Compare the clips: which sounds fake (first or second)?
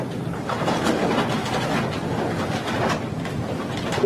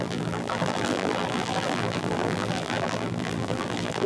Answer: second